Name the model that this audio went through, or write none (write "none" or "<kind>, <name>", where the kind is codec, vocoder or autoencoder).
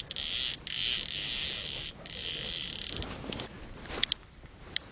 none